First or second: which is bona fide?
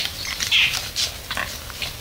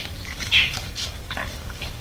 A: first